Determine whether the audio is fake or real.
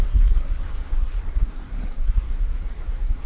fake